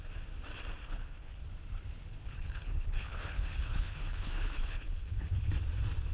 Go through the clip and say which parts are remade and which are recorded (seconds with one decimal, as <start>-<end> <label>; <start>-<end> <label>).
0.0-0.8 recorded; 0.8-1.4 remade; 1.4-2.2 recorded; 2.2-5.5 remade; 5.5-6.1 recorded

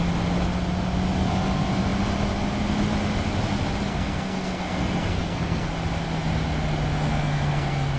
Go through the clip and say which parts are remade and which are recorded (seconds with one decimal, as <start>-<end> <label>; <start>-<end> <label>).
0.0-3.9 recorded; 3.9-5.7 remade; 5.7-7.1 recorded; 7.1-8.0 remade

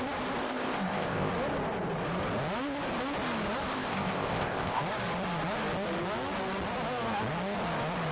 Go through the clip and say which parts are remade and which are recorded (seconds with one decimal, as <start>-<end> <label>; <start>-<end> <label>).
0.0-0.4 recorded; 0.4-1.3 remade; 1.3-3.7 recorded; 3.7-4.8 remade; 4.8-8.1 recorded

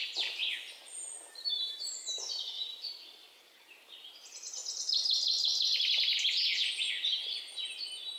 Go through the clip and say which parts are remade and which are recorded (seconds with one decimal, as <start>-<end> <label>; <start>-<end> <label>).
0.0-0.4 remade; 0.4-1.5 recorded; 1.5-4.6 remade; 4.6-8.2 recorded

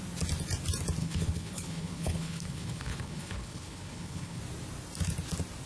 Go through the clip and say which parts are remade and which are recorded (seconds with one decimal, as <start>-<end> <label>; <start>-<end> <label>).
0.0-1.0 recorded; 1.0-4.4 remade; 4.4-5.7 recorded